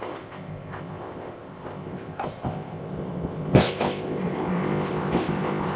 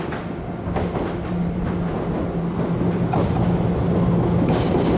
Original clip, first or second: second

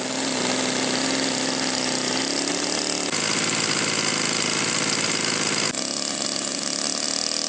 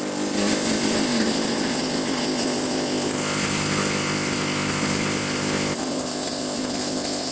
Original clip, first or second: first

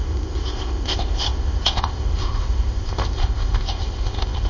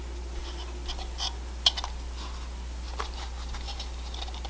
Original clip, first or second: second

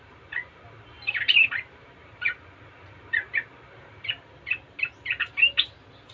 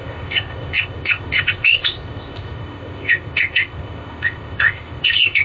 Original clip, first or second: first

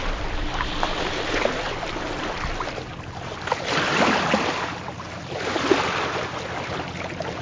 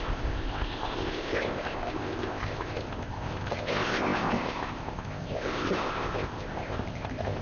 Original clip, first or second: first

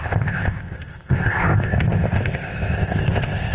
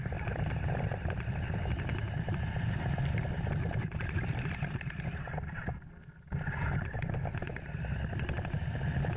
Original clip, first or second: second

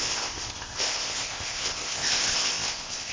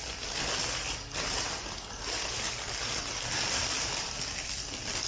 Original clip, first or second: second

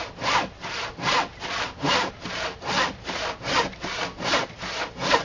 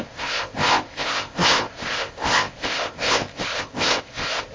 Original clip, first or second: first